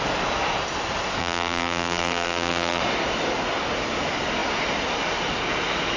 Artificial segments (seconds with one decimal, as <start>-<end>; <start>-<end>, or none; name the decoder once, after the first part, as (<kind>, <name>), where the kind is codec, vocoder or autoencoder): 1.2-2.8 (vocoder, BigVGAN v2)